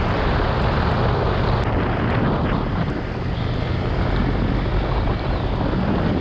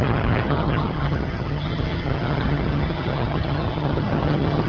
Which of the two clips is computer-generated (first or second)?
second